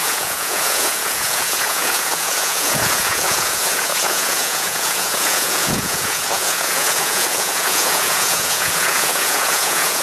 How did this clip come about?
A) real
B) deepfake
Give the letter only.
B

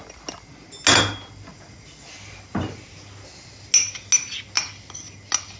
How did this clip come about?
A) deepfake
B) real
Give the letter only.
B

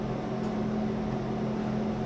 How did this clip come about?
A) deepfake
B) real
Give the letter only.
B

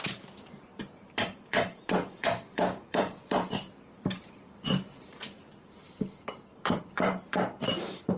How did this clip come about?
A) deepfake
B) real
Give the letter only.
A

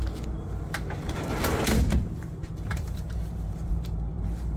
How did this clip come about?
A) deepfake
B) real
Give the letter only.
A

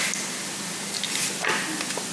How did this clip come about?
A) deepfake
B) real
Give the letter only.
B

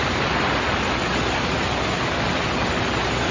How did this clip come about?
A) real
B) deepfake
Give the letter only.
A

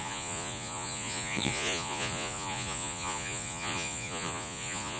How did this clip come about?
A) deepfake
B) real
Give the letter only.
A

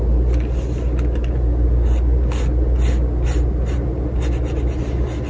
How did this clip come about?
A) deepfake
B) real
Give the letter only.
B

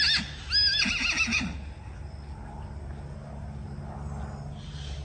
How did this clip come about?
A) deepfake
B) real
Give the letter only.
B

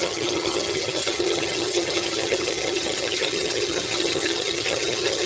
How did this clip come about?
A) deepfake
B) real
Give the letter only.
A